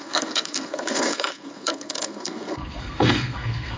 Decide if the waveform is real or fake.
fake